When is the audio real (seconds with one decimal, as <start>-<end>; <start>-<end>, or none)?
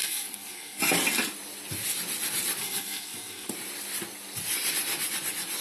0.8-2.6; 3.5-5.6